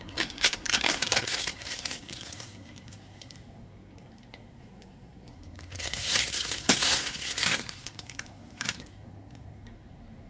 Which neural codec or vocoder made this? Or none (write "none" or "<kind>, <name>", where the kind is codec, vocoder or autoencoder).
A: codec, SNAC